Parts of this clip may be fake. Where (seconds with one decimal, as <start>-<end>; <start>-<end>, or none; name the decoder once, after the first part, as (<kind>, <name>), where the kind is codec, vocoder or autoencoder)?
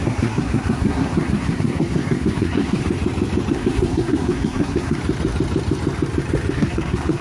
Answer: 0.0-2.8 (codec, SNAC); 3.5-5.0; 6.5-7.2